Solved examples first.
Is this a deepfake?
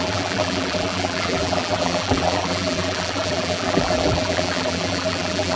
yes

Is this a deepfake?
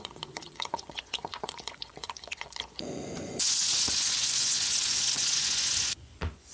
yes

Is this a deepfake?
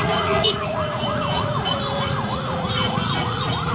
yes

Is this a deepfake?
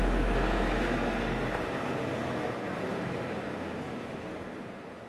no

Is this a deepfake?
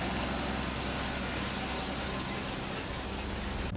no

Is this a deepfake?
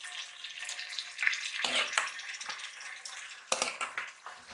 no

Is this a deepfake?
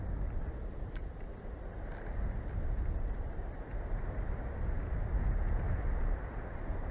no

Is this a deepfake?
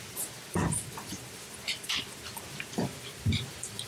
yes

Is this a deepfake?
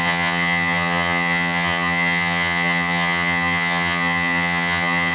yes